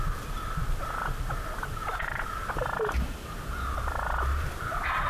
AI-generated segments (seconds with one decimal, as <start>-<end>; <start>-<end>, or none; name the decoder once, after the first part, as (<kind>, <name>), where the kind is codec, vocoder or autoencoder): 1.8-2.5 (vocoder, BigVGAN v2)